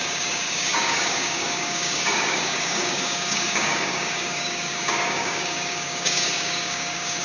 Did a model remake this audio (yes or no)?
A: yes